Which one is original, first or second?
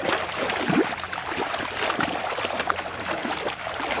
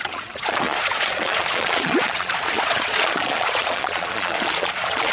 first